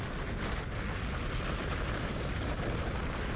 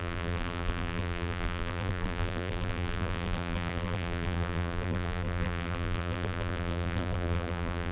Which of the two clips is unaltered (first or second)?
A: first